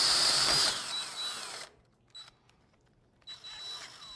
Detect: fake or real real